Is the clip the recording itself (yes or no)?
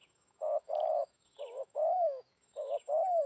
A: no